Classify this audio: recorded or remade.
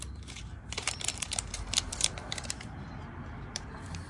remade